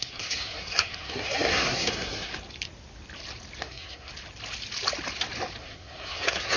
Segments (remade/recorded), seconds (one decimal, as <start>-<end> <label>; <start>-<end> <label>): 0.0-2.3 remade; 2.3-3.6 recorded; 3.6-4.1 remade; 4.1-5.6 recorded; 5.6-6.6 remade